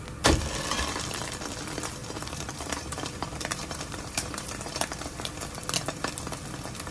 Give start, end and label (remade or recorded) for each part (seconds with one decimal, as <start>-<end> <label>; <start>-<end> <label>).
0.0-2.0 recorded; 2.0-5.4 remade; 5.4-6.9 recorded